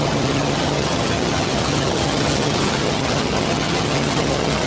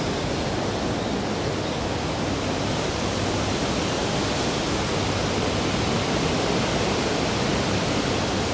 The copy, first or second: first